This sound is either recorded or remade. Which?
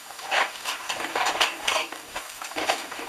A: remade